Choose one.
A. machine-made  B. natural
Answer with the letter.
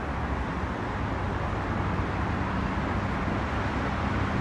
B